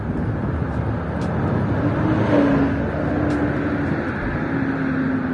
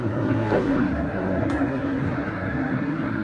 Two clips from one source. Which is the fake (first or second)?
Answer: second